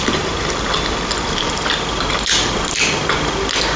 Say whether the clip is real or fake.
real